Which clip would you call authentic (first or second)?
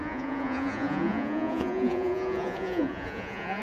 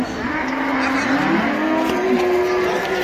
second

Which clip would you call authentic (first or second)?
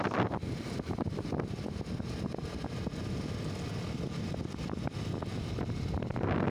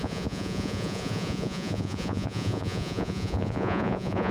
first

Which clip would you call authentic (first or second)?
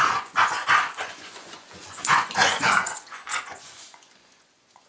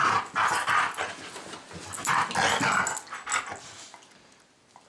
second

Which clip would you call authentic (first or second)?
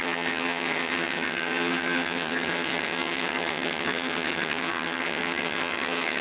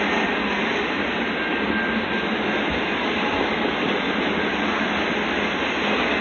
second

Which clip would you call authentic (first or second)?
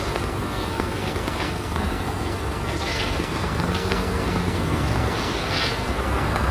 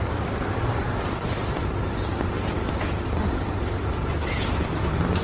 second